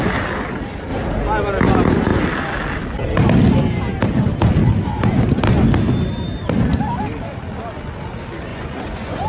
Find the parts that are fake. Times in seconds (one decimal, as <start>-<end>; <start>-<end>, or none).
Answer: 8.5-9.3